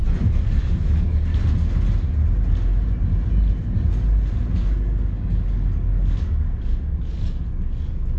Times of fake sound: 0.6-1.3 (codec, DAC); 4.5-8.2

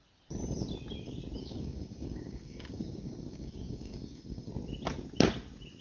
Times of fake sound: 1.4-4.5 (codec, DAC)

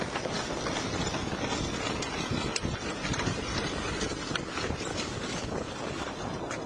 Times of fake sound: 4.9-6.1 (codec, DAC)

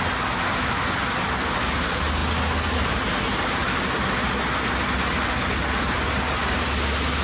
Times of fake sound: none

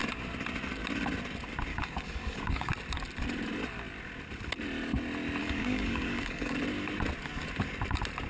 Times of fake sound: 1.7-2.7 (codec, DAC); 5.4-6.6